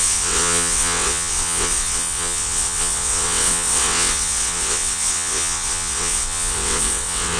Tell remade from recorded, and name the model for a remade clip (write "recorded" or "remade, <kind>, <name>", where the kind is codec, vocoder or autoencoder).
remade, vocoder, WaveNeXt